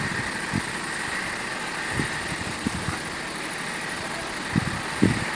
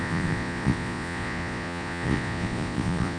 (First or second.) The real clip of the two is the first